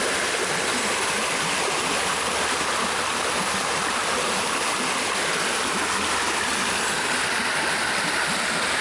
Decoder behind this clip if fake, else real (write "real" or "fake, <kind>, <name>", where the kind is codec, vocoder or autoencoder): real